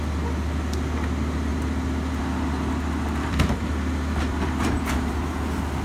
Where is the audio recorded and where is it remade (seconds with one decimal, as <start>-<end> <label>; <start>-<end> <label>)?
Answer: 0.0-4.6 recorded; 4.6-5.2 remade; 5.2-5.8 recorded